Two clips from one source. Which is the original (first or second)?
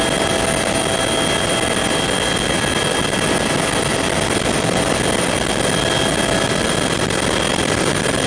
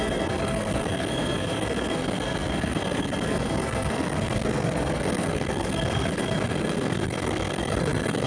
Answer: first